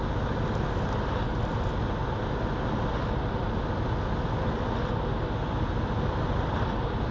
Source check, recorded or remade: recorded